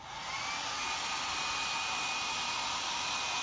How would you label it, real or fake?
real